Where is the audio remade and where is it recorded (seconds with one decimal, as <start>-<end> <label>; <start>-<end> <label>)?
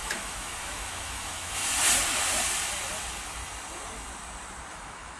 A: 0.0-1.6 remade; 1.6-4.7 recorded; 4.7-5.2 remade